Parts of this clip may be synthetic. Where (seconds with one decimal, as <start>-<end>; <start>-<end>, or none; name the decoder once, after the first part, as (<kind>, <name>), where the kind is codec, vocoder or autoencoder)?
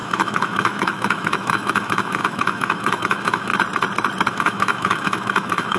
0.0-3.5 (autoencoder, DAC-VAE); 4.3-5.8